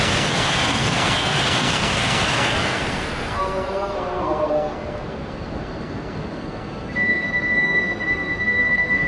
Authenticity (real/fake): fake